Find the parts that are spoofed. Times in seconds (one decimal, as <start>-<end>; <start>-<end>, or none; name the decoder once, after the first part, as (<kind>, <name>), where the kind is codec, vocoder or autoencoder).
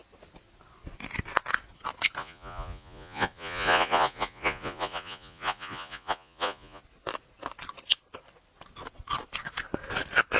2.2-6.8 (vocoder, Vocos)